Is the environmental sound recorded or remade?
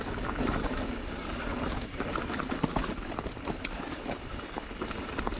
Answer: recorded